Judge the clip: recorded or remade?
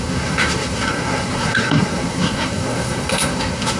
remade